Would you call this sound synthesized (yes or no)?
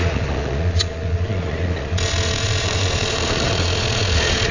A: yes